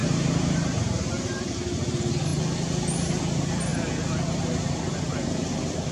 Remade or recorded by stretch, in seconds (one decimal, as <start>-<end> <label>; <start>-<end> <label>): 0.0-1.5 remade; 1.5-5.9 recorded